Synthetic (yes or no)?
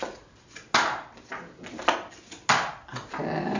no